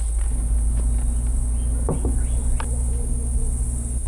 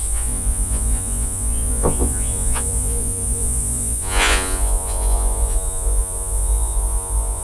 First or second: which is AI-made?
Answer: second